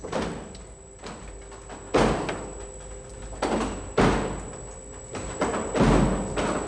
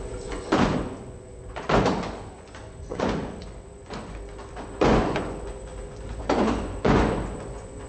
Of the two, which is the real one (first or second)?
first